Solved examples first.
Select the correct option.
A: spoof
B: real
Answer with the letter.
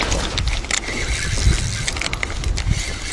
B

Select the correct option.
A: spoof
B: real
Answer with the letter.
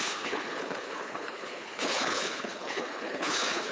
A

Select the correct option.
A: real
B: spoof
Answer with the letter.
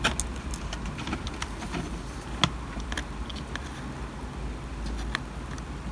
A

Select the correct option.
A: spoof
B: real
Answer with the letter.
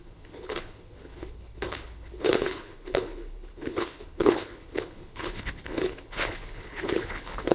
A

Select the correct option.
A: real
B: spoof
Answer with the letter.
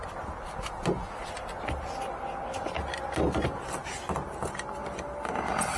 A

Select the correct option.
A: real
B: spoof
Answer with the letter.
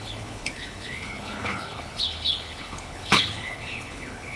B